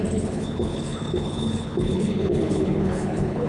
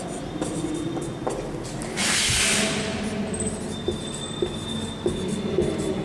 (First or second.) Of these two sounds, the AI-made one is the first